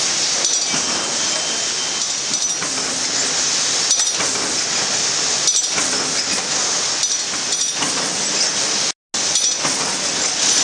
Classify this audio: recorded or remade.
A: recorded